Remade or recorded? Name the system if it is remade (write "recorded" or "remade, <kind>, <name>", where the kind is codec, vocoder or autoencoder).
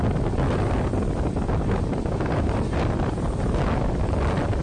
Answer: recorded